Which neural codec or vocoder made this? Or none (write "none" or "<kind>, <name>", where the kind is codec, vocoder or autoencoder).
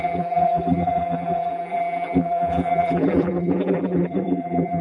vocoder, BigVGAN v2